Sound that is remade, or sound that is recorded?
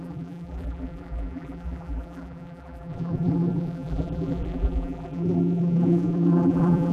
remade